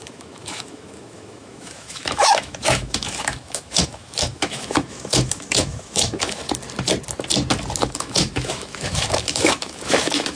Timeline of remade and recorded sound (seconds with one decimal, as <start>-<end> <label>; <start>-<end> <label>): 0.0-6.4 remade; 6.4-7.8 recorded; 7.8-10.4 remade